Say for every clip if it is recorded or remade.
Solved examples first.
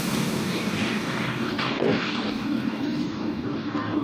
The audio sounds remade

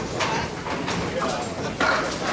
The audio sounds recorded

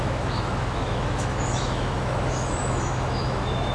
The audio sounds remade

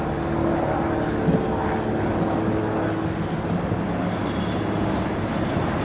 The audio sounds recorded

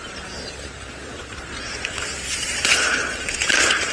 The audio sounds remade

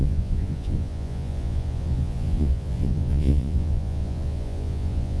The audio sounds remade